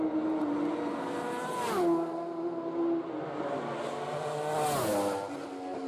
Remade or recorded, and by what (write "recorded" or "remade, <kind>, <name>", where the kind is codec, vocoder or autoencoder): recorded